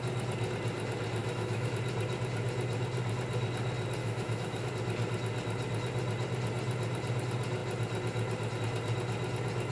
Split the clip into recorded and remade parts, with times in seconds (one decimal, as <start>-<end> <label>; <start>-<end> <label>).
0.0-1.2 recorded; 1.2-1.7 remade; 1.7-4.0 recorded; 4.0-4.7 remade; 4.7-9.7 recorded